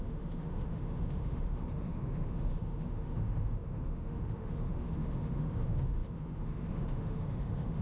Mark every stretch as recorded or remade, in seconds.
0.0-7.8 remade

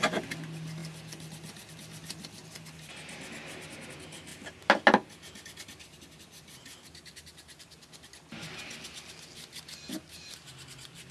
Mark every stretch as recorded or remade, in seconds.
0.0-11.1 recorded

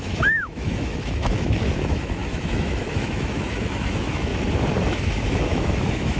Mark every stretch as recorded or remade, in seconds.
0.0-4.3 remade; 4.3-4.9 recorded; 4.9-6.2 remade

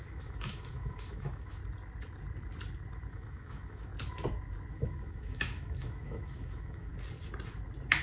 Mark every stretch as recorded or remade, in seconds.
0.0-1.6 remade; 1.6-3.1 recorded; 3.1-3.9 remade; 3.9-4.7 recorded; 4.7-6.9 remade; 6.9-8.0 recorded

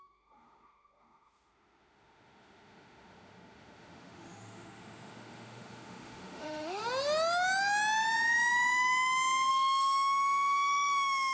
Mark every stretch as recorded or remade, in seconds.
0.0-6.8 remade; 6.8-9.5 recorded; 9.5-11.3 remade

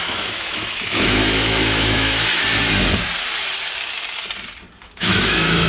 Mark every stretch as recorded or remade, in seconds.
0.0-2.4 remade; 2.4-4.8 recorded; 4.8-5.7 remade

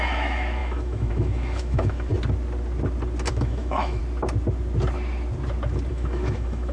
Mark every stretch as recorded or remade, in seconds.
0.0-2.1 remade; 2.1-3.3 recorded; 3.3-4.0 remade; 4.0-5.9 recorded; 5.9-6.7 remade

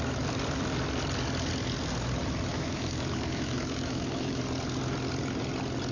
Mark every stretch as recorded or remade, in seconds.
0.0-2.5 recorded; 2.5-4.4 remade; 4.4-5.9 recorded